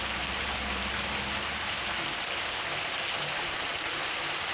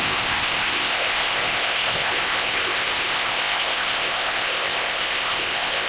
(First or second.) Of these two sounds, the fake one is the second